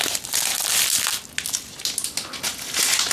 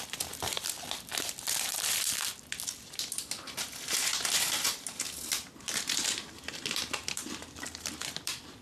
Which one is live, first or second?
first